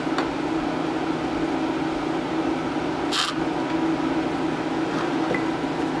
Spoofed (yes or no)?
no